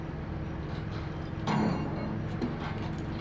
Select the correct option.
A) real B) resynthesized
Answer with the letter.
A